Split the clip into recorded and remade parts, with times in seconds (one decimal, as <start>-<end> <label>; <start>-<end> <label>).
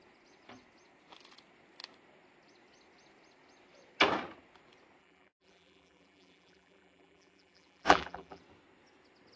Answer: 0.0-5.0 recorded; 5.0-8.4 remade; 8.4-9.4 recorded